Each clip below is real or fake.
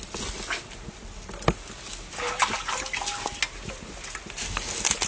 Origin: real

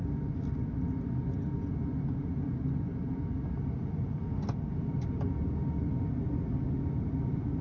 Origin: real